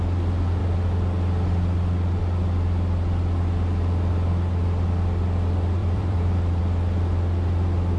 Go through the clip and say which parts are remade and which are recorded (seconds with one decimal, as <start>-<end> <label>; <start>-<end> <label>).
0.0-5.8 recorded; 5.8-6.6 remade; 6.6-8.0 recorded